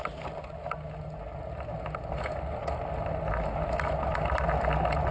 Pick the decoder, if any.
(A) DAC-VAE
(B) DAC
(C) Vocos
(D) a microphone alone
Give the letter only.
D